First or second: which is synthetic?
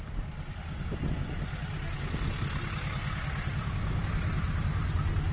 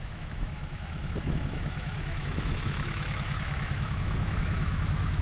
second